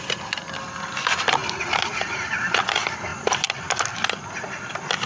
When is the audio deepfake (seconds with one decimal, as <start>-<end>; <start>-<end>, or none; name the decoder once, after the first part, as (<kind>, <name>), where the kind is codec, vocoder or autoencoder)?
none